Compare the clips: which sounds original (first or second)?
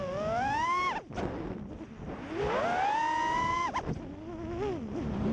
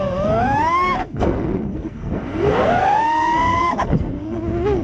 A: first